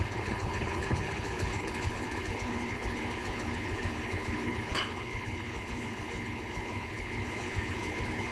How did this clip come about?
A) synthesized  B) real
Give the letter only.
A